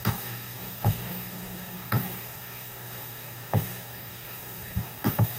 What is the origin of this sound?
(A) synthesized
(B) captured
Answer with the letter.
A